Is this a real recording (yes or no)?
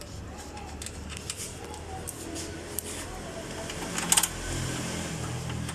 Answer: yes